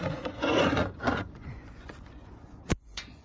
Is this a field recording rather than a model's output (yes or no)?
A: no